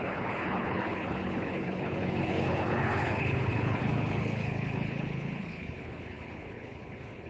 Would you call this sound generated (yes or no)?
yes